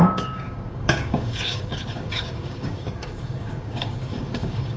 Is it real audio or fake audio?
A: fake